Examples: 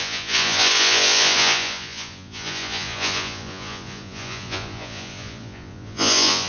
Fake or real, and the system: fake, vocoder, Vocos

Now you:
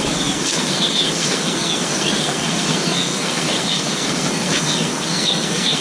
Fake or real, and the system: fake, codec, SNAC